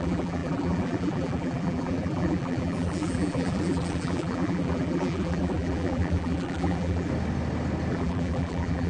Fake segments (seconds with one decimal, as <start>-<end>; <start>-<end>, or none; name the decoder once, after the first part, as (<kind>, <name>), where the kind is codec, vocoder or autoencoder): 0.0-7.1 (vocoder, BigVGAN v2); 7.9-8.9